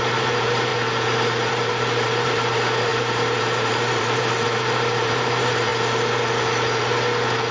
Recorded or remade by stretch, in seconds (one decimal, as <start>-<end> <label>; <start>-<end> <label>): 0.0-0.7 remade; 0.7-1.5 recorded; 1.5-5.7 remade; 5.7-7.5 recorded